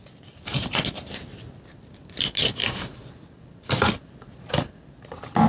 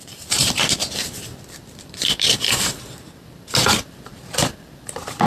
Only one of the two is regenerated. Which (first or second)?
second